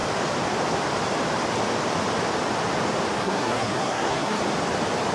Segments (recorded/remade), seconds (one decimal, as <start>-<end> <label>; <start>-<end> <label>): 0.0-3.2 recorded; 3.2-4.4 remade; 4.4-5.1 recorded